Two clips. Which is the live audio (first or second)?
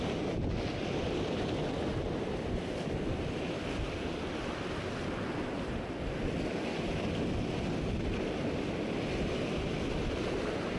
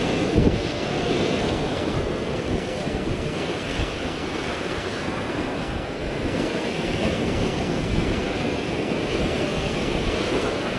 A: first